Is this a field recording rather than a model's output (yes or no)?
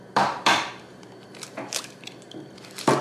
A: no